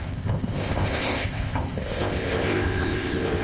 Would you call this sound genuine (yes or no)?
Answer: no